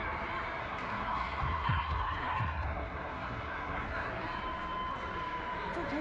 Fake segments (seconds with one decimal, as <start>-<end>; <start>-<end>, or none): 0.6-4.1